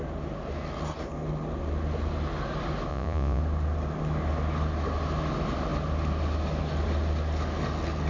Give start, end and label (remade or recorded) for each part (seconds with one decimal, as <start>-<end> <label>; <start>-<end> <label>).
0.0-2.9 recorded; 2.9-3.4 remade; 3.4-8.1 recorded